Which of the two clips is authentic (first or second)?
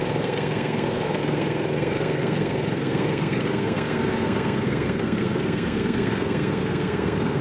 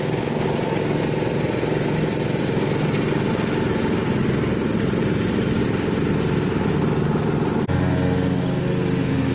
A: second